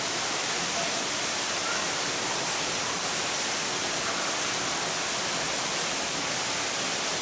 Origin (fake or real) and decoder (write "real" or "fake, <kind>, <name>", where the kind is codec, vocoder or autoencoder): real